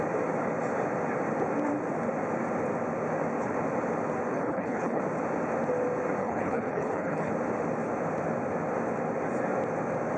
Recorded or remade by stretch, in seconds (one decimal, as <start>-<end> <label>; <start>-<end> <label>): 0.0-4.3 recorded; 4.3-5.0 remade; 5.0-6.2 recorded; 6.2-7.3 remade; 7.3-10.2 recorded